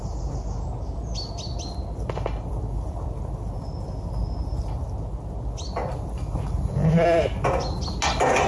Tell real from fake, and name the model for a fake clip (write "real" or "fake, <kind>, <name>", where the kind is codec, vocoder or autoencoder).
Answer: real